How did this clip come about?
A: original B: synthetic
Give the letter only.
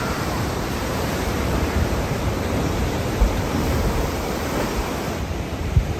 B